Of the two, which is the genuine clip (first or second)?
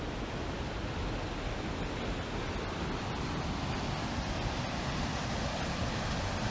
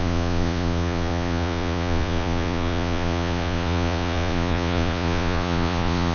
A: first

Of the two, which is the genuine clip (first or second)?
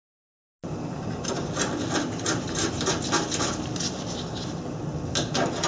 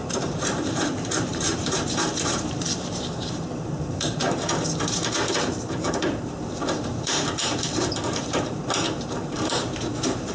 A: first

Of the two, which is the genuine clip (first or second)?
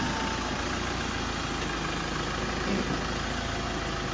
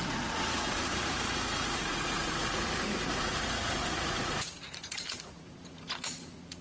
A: first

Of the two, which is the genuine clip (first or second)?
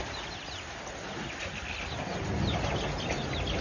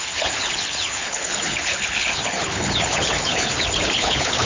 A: first